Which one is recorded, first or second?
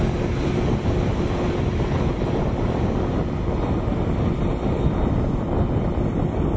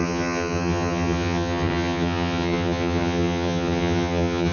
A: first